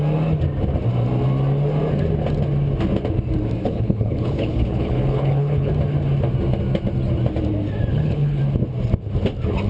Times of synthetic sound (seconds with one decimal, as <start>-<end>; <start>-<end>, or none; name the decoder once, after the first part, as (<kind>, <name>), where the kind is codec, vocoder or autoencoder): 3.6-5.7 (codec, HILCodec); 7.9-8.4